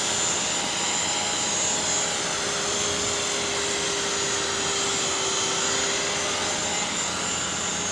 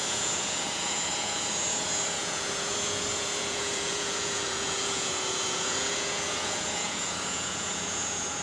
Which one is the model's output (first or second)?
second